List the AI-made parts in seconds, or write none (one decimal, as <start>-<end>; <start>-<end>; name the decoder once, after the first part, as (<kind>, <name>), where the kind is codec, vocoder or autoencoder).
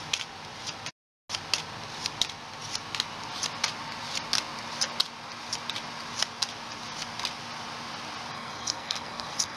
8.3-9.6 (codec, SNAC)